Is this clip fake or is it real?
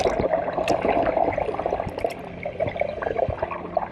real